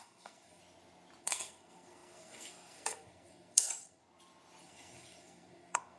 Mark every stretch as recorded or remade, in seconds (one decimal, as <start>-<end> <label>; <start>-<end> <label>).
0.0-0.6 remade; 0.6-1.2 recorded; 1.2-4.0 remade; 4.0-4.6 recorded; 4.6-6.0 remade